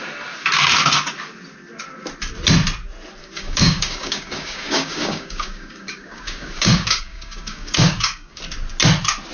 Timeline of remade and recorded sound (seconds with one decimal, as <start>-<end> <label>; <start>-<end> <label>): 0.0-3.2 recorded; 3.2-8.4 remade; 8.4-9.3 recorded